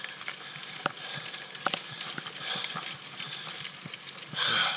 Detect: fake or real real